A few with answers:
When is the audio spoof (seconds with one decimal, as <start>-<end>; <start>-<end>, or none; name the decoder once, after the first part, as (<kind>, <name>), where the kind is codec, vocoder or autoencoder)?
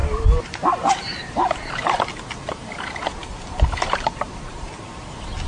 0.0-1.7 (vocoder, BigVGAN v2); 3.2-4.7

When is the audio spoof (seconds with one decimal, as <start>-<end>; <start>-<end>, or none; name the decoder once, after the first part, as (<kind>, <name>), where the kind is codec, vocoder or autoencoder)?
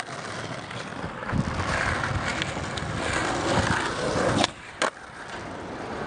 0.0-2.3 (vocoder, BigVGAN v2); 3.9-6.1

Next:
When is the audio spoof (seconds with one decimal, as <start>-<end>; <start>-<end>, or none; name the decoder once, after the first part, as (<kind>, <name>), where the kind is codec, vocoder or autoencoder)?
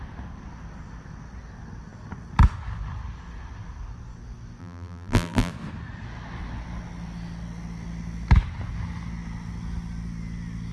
4.6-5.5 (vocoder, BigVGAN v2)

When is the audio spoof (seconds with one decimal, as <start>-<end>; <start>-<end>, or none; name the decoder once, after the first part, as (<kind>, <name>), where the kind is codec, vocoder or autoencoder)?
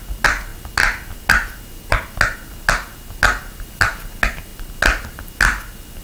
none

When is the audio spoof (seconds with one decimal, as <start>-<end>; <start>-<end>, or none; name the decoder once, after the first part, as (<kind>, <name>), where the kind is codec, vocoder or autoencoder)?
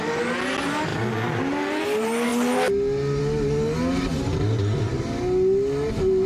none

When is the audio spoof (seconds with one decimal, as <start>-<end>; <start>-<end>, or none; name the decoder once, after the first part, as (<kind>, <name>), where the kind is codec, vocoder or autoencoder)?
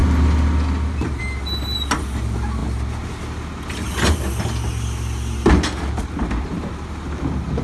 none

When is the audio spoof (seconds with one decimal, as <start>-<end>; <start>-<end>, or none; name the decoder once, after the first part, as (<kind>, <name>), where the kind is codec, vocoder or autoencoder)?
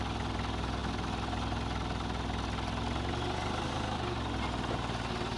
none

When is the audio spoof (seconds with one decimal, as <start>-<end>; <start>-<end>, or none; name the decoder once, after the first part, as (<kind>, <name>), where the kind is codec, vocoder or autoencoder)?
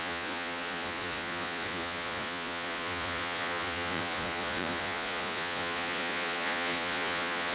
0.0-7.5 (vocoder, Vocos)